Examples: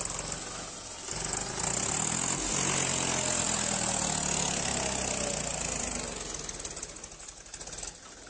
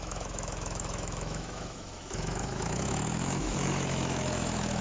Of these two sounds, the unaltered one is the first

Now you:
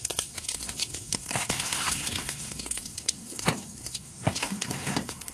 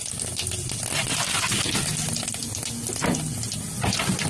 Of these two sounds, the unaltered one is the second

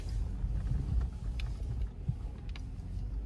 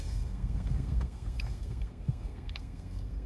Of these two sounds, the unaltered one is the first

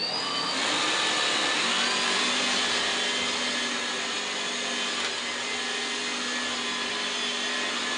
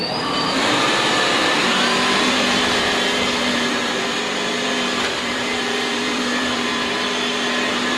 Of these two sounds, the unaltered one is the first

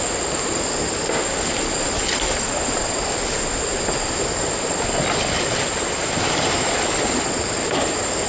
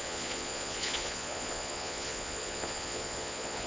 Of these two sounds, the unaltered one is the first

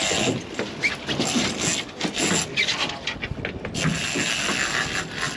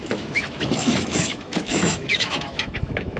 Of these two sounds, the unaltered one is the first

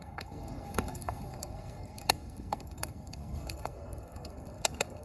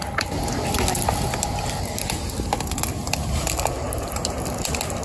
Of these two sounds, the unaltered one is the second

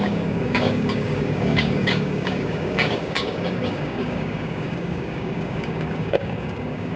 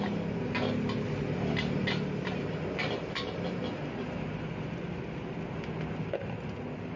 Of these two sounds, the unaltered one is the second